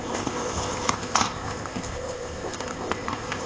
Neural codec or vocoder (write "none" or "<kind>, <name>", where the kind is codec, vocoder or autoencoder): codec, ZipCodec